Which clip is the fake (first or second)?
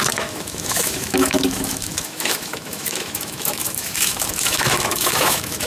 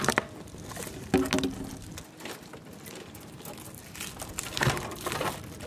first